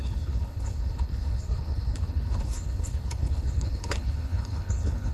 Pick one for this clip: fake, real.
fake